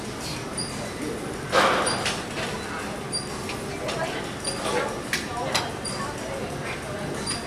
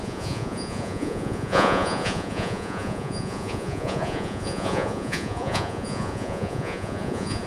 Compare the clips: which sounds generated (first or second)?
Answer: second